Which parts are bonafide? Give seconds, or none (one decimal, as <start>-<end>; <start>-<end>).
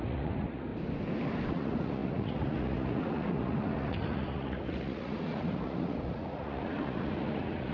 0.7-1.5